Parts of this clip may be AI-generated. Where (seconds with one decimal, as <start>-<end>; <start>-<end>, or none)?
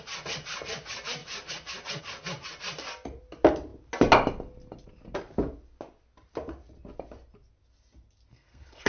8.3-8.9